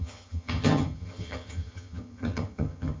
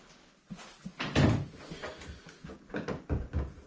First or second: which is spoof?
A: first